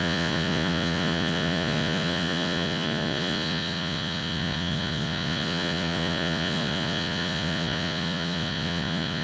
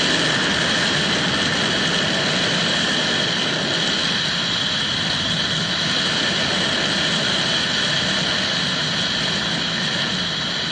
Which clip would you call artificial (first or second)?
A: first